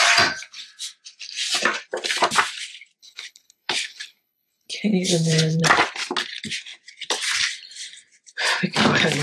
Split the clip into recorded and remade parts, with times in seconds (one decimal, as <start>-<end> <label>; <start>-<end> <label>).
0.0-3.0 recorded; 3.0-5.6 remade; 5.6-9.2 recorded